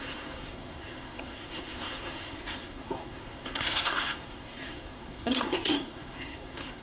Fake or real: fake